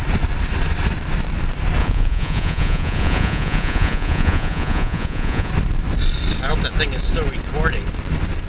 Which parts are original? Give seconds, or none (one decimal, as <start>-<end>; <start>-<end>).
0.0-1.8; 5.5-8.5